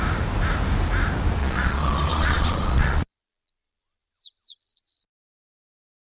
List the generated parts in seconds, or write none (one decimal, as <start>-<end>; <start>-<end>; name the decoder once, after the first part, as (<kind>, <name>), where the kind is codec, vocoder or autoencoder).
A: 1.4-5.1 (vocoder, Vocos)